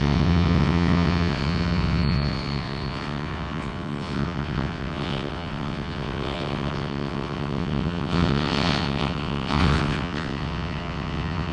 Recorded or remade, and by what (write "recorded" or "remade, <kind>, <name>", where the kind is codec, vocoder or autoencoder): remade, vocoder, WaveNeXt